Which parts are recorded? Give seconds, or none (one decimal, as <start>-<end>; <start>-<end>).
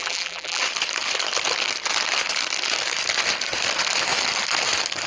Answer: 0.6-5.1